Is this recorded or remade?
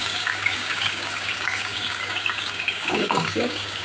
remade